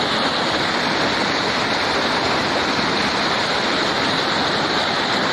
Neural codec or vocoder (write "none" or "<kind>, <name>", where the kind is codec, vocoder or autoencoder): none